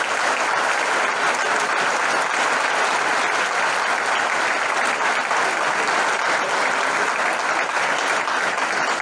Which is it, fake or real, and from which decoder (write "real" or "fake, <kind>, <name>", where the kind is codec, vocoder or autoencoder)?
real